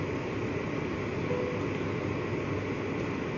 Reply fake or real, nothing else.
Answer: real